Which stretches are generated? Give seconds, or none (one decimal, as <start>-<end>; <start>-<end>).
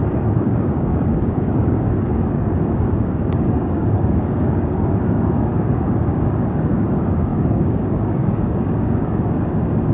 0.0-9.9